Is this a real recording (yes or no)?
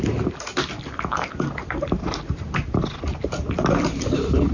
yes